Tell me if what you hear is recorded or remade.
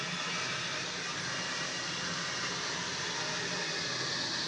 recorded